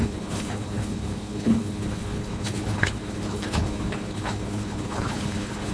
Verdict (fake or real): fake